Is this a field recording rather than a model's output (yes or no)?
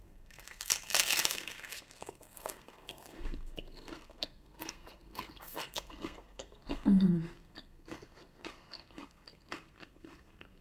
no